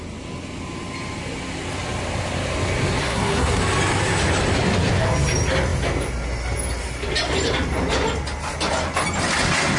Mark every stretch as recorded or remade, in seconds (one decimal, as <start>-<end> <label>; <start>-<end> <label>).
0.0-3.0 recorded; 3.0-3.6 remade; 3.6-9.8 recorded